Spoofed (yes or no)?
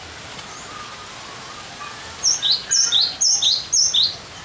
no